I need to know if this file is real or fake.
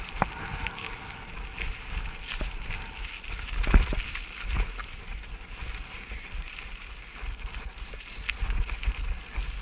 real